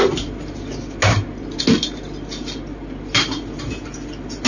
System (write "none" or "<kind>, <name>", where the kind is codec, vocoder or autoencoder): none